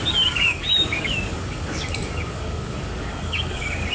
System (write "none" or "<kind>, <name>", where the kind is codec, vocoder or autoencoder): codec, DAC